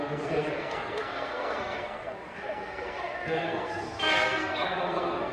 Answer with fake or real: fake